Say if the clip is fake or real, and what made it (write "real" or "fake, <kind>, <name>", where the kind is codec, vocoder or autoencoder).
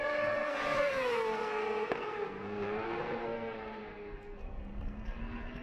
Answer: fake, codec, SNAC